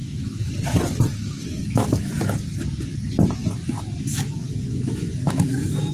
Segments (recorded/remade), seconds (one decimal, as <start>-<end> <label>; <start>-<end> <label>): 0.0-0.5 remade; 0.5-1.1 recorded; 1.1-2.1 remade; 2.1-4.1 recorded; 4.1-5.9 remade

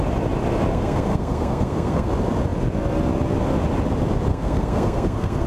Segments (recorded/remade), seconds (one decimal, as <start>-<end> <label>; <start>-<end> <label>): 0.0-0.7 recorded; 0.7-2.1 remade; 2.1-4.3 recorded; 4.3-5.5 remade

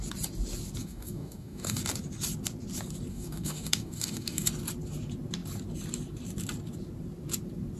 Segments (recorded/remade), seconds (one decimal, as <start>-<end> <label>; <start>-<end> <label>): 0.0-0.8 recorded; 0.8-1.8 remade; 1.8-3.1 recorded; 3.1-4.5 remade; 4.5-7.8 recorded